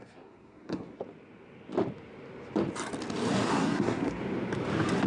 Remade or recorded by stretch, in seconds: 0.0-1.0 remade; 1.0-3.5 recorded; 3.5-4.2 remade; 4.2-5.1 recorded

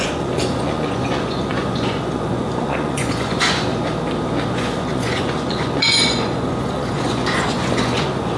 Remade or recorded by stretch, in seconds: 0.0-3.7 remade; 3.7-4.5 recorded; 4.5-8.4 remade

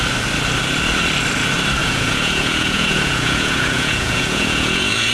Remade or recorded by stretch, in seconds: 0.0-1.8 recorded; 1.8-5.1 remade

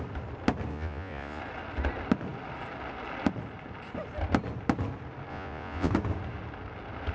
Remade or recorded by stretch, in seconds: 0.0-0.7 recorded; 0.7-1.4 remade; 1.4-5.3 recorded; 5.3-5.9 remade; 5.9-7.1 recorded

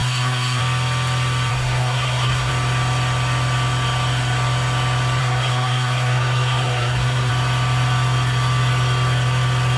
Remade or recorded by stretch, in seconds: 0.0-0.6 remade; 0.6-1.5 recorded; 1.5-2.5 remade; 2.5-5.2 recorded; 5.2-7.3 remade; 7.3-9.8 recorded

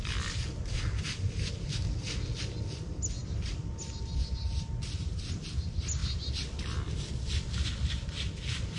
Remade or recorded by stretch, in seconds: 0.0-8.8 recorded

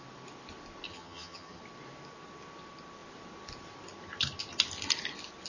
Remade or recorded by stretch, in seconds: 0.0-0.9 recorded; 0.9-1.6 remade; 1.6-5.5 recorded

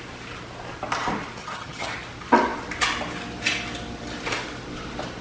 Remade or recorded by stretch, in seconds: 0.0-1.4 recorded; 1.4-1.9 remade; 1.9-5.2 recorded